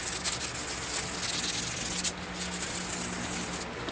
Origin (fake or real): real